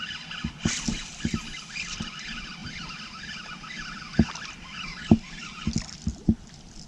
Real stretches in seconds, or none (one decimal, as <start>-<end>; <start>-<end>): 0.0-6.9